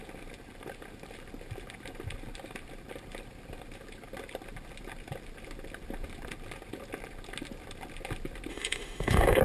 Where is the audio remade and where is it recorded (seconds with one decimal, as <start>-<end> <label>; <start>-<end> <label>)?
0.0-8.5 recorded; 8.5-9.4 remade